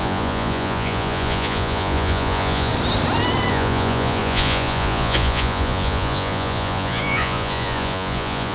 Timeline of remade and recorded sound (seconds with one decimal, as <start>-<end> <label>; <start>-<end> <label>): 0.0-2.7 remade; 2.7-3.5 recorded; 3.5-8.5 remade